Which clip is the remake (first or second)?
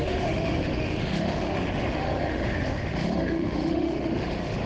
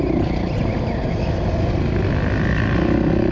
first